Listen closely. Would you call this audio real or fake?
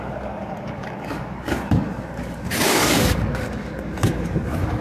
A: fake